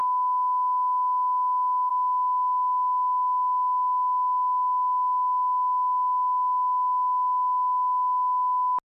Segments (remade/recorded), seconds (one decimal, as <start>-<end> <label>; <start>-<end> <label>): 0.0-8.9 recorded